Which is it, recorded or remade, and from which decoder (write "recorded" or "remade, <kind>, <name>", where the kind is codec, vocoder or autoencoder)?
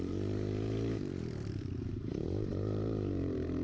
remade, vocoder, BigVGAN v2